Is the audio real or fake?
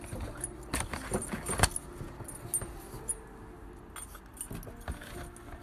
real